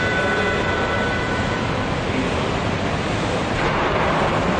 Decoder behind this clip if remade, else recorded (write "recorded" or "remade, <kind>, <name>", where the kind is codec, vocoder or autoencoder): recorded